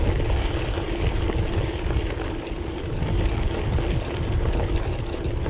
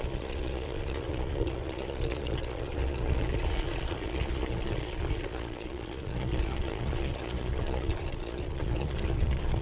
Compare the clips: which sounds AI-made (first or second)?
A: second